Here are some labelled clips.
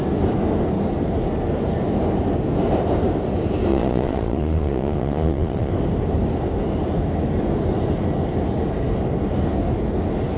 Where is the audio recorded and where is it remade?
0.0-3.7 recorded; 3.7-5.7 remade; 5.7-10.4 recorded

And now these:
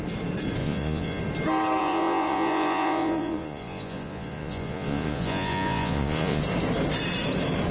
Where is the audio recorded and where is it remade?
0.0-0.6 recorded; 0.6-1.2 remade; 1.2-1.8 recorded; 1.8-6.4 remade; 6.4-7.7 recorded

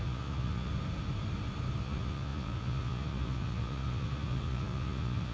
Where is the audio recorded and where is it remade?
0.0-0.7 remade; 0.7-1.8 recorded; 1.8-5.3 remade